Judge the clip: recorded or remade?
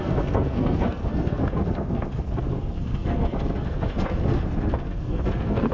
remade